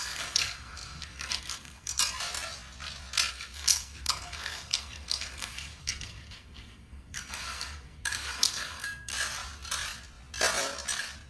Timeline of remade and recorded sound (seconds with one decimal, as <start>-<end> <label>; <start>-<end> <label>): 0.0-2.0 remade; 2.0-3.3 recorded; 3.3-9.1 remade; 9.1-11.3 recorded